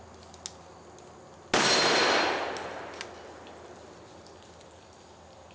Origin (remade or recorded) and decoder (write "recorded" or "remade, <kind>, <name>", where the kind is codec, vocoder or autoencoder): recorded